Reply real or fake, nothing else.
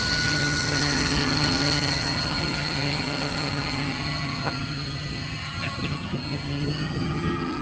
fake